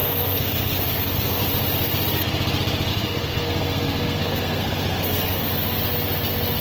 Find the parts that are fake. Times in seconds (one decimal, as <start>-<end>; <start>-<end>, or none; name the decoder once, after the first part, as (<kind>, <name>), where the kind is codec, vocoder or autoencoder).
0.0-1.4 (codec, SNAC); 2.9-5.5